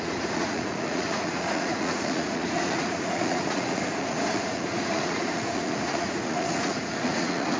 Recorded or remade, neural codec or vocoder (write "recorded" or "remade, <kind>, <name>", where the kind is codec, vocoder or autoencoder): remade, vocoder, Vocos